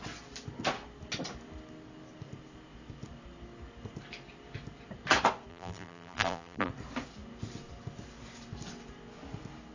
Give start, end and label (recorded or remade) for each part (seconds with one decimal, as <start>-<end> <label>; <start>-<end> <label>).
0.0-5.5 recorded; 5.5-6.7 remade; 6.7-9.7 recorded